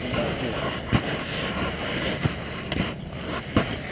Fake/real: real